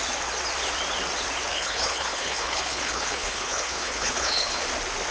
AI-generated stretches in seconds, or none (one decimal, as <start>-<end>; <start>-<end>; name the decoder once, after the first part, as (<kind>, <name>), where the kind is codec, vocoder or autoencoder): 1.5-4.6 (codec, HILCodec)

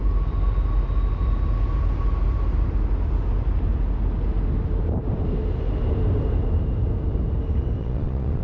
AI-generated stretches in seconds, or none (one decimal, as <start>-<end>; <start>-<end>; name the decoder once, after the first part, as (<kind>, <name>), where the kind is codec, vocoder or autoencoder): 7.8-8.4 (vocoder, Vocos)

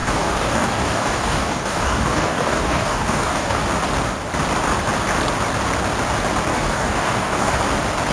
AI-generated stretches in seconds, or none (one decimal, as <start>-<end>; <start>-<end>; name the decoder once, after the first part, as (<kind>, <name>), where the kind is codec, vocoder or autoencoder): 0.0-3.6 (codec, DAC); 6.5-7.6

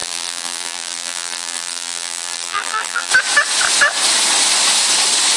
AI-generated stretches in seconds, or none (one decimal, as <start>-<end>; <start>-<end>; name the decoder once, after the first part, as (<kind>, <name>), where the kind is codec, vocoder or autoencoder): 0.0-3.1 (vocoder, BigVGAN v2)

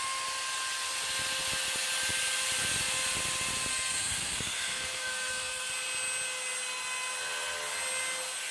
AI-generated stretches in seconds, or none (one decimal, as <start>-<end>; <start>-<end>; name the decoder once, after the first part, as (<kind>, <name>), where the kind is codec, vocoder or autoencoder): 3.7-5.7 (codec, SNAC)

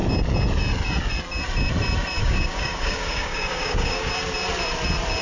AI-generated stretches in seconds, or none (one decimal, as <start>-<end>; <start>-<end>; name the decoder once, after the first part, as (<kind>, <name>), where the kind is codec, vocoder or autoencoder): 2.2-4.1 (codec, DAC)

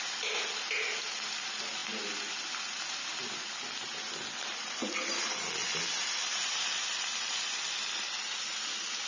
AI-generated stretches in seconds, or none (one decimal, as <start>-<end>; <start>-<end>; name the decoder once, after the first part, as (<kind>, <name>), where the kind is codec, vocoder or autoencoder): none

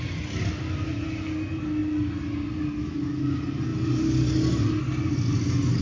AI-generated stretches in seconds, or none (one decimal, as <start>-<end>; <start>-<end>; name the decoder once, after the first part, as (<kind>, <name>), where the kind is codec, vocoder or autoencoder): none